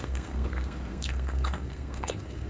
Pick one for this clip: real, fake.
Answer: fake